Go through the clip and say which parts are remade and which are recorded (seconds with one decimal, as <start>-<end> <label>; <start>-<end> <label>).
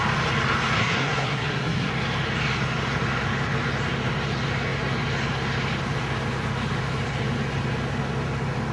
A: 0.0-0.8 recorded; 0.8-1.9 remade; 1.9-8.7 recorded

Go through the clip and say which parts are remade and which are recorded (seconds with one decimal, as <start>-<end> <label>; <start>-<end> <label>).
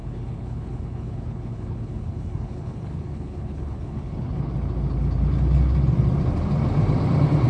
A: 0.0-4.5 remade; 4.5-7.5 recorded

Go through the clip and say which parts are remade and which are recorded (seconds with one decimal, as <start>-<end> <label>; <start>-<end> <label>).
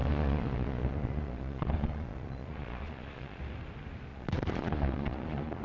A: 0.0-3.4 remade; 3.4-4.1 recorded; 4.1-5.6 remade